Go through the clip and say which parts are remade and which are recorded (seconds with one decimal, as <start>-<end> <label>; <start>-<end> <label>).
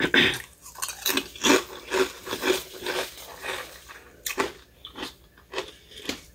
0.0-2.2 recorded; 2.2-5.1 remade; 5.1-6.3 recorded